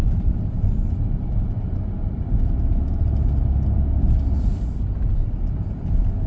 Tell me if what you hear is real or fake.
real